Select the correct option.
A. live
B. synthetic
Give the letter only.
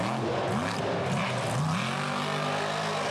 A